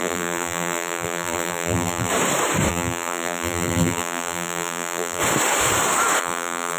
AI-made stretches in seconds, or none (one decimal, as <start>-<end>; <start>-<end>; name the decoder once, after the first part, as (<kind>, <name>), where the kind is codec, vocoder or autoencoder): 0.0-2.1 (vocoder, BigVGAN v2); 2.7-5.2; 6.2-6.8

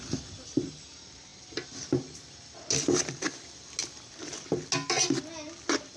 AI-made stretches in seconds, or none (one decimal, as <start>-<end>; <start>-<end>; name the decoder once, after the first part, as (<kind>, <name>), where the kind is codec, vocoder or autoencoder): none